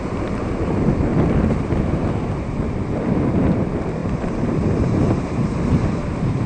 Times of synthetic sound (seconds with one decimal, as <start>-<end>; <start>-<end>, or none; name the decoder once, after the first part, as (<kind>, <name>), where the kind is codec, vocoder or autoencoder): 0.0-1.1 (vocoder, BigVGAN v2); 3.5-6.5

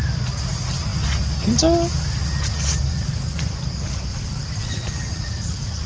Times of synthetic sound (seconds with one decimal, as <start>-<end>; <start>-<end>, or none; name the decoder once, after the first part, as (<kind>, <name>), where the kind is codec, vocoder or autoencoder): 2.9-3.6 (vocoder, Vocos); 4.1-5.9

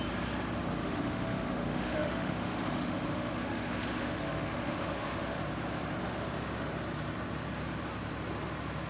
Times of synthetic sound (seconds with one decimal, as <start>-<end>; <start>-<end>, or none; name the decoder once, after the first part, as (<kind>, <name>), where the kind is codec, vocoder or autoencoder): 0.8-5.4 (autoencoder, DAC-VAE); 6.0-6.7

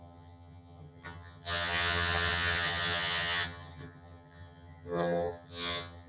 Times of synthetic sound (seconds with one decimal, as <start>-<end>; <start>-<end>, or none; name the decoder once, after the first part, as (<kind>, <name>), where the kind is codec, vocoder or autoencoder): 0.0-6.1 (vocoder, HiFi-GAN)